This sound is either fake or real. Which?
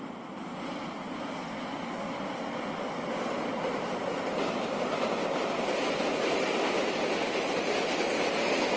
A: real